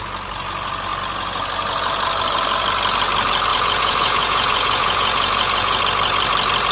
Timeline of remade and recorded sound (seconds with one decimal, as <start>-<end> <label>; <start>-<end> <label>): 0.0-3.5 recorded; 3.5-5.8 remade; 5.8-6.7 recorded